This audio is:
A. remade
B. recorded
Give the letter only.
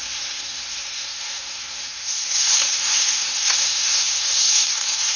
A